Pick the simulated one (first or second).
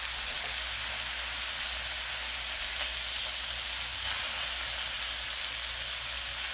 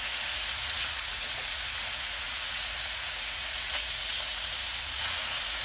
second